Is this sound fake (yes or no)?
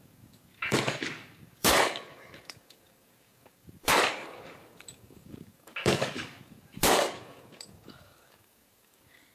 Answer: yes